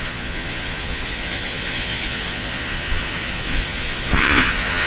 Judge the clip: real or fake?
fake